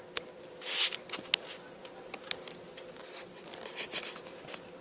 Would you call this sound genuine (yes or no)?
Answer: yes